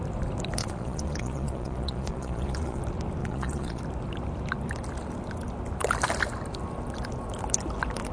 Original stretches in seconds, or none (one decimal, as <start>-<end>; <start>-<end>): 0.0-0.6; 2.8-3.2; 3.8-8.1